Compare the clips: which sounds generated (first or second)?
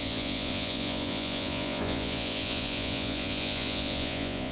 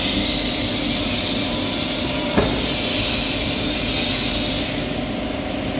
first